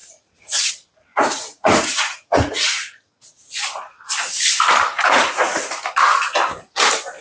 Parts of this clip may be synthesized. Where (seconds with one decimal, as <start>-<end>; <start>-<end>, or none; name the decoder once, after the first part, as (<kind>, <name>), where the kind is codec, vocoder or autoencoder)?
0.0-0.7 (vocoder, Vocos); 1.1-3.5; 4.9-5.8